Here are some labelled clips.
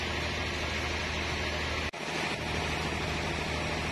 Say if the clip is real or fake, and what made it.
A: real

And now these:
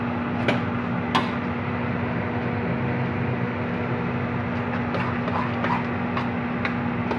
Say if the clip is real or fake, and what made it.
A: real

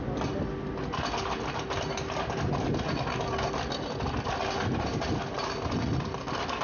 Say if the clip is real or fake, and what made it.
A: real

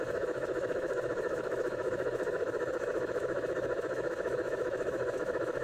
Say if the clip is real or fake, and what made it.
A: fake, autoencoder, DAC-VAE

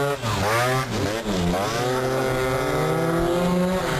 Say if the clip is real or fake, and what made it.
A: real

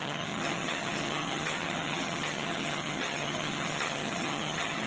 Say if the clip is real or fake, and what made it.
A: fake, vocoder, HiFi-GAN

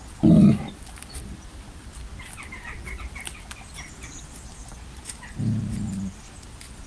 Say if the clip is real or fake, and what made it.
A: real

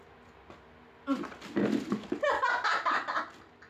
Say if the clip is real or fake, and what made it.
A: real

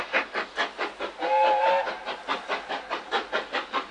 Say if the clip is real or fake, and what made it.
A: real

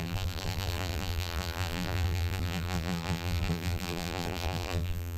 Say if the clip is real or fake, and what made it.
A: fake, vocoder, BigVGAN v2